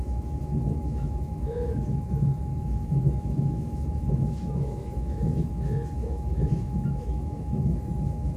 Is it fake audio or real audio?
fake